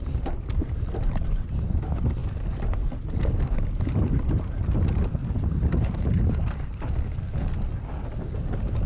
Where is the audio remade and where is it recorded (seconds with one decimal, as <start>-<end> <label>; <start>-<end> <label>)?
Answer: 0.0-8.9 recorded